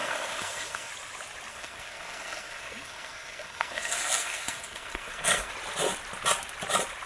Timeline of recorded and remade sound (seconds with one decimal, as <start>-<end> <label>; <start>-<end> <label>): 0.0-0.9 remade; 0.9-1.5 recorded; 1.5-5.5 remade; 5.5-7.1 recorded